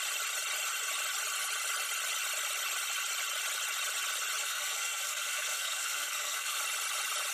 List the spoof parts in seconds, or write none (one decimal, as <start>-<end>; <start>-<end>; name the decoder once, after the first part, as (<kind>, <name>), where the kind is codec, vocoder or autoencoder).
4.4-6.6 (codec, SNAC)